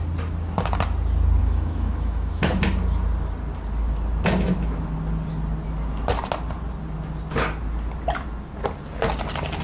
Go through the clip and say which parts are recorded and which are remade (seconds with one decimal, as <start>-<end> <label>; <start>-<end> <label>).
0.0-1.4 recorded; 1.4-2.6 remade; 2.6-9.6 recorded